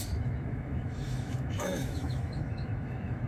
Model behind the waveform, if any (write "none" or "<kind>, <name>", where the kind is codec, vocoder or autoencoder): autoencoder, DAC-VAE